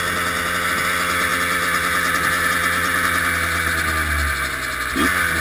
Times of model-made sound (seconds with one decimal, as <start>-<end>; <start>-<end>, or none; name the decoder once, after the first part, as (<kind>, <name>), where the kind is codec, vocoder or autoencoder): none